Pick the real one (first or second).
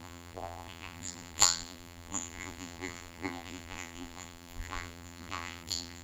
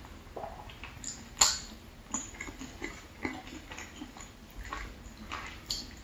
second